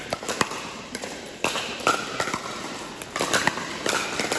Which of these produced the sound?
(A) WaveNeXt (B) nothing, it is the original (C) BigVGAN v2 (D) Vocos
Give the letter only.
B